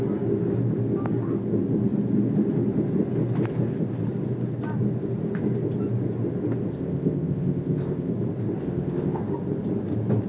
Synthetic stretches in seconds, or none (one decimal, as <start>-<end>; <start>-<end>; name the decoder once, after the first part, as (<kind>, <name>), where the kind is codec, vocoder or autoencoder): 6.7-8.1 (codec, ZipCodec); 8.6-9.2